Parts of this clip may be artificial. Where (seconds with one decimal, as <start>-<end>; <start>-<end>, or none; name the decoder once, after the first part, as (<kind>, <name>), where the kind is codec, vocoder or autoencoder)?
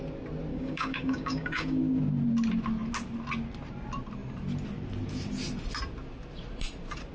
0.5-1.8 (codec, DAC)